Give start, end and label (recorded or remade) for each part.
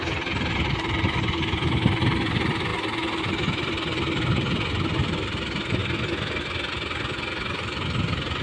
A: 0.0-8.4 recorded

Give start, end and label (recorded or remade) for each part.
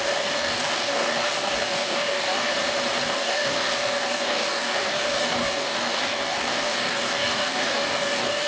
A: 0.0-2.5 remade; 2.5-3.0 recorded; 3.0-8.5 remade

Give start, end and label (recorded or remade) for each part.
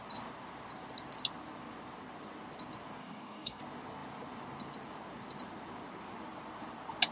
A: 0.0-3.0 recorded; 3.0-3.6 remade; 3.6-7.1 recorded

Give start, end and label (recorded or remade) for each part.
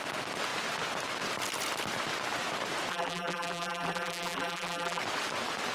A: 0.0-2.9 recorded; 2.9-5.0 remade; 5.0-5.7 recorded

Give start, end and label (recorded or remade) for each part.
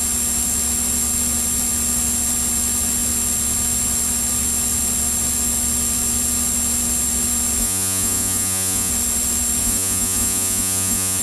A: 0.0-7.6 recorded; 7.6-8.9 remade; 8.9-9.6 recorded; 9.6-11.2 remade